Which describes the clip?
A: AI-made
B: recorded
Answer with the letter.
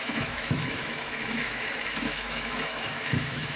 A